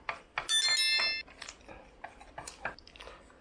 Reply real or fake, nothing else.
real